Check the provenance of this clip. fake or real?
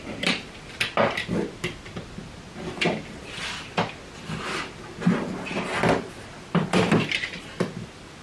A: real